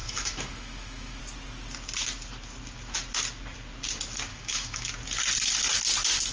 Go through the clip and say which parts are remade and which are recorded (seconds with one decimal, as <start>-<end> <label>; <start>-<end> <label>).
0.0-1.2 remade; 1.2-4.3 recorded; 4.3-4.9 remade; 4.9-6.3 recorded